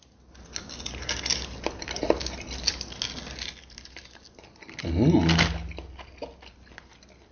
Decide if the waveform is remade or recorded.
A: recorded